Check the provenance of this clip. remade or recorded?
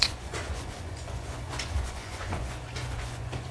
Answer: remade